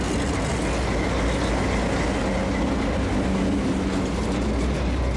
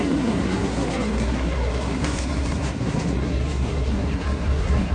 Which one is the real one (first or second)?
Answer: first